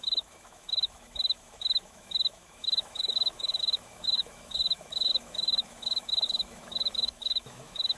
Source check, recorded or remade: remade